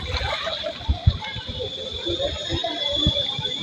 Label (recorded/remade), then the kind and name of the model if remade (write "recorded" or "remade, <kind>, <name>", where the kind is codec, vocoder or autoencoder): remade, vocoder, BigVGAN v2